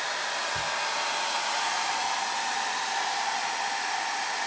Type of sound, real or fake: real